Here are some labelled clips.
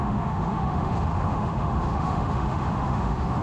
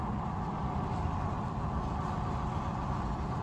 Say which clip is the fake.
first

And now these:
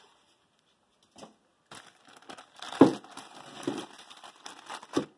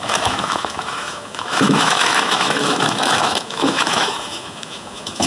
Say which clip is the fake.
second